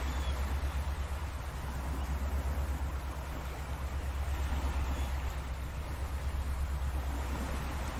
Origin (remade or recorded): recorded